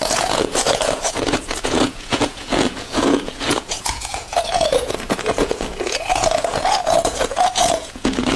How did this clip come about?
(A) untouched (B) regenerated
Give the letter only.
B